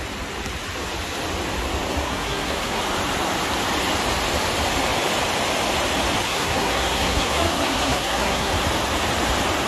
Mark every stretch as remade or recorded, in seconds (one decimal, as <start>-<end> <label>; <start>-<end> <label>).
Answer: 0.0-1.9 recorded; 1.9-2.8 remade; 2.8-6.3 recorded; 6.3-8.5 remade; 8.5-9.7 recorded